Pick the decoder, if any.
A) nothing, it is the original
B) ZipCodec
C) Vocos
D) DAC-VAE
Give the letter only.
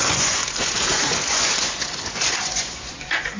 C